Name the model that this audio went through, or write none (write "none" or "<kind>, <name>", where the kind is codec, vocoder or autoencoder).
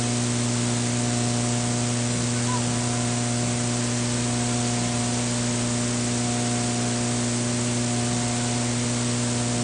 none